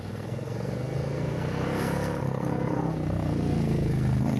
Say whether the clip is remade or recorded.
remade